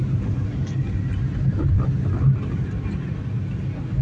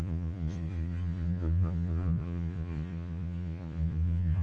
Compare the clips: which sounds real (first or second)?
first